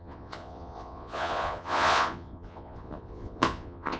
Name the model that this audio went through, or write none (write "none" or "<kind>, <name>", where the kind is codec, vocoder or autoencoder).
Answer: vocoder, Vocos